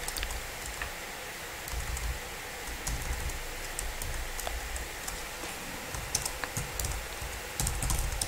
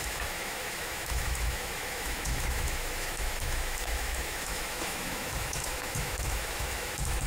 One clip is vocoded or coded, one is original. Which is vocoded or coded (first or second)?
second